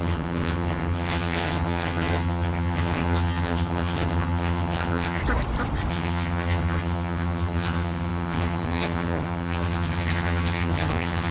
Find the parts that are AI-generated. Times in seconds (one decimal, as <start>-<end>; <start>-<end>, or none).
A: 0.0-5.2; 5.9-11.3